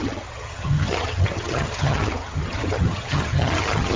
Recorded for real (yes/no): no